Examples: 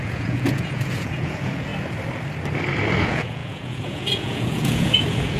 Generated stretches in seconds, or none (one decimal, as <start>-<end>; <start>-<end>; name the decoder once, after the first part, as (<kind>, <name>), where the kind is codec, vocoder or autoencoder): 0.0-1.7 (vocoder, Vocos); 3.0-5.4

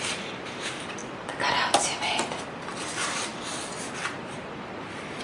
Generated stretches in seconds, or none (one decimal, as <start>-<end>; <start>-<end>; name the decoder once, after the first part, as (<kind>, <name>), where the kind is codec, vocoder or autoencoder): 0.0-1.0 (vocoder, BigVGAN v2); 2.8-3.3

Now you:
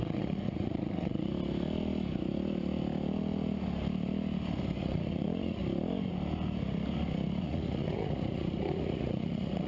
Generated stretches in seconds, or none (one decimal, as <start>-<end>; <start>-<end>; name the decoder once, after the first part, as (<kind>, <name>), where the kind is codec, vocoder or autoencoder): 0.0-1.3 (vocoder, Vocos); 4.8-5.6; 7.4-9.7

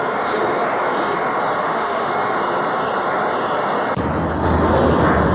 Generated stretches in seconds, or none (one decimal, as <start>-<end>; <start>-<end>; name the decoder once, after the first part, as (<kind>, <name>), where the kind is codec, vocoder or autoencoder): 1.6-2.1 (autoencoder, DAC-VAE)